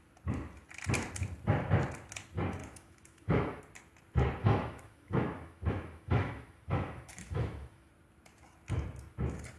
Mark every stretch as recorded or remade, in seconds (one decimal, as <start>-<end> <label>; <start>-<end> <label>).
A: 0.0-2.6 recorded; 2.6-3.6 remade; 3.6-4.4 recorded; 4.4-7.9 remade; 7.9-9.6 recorded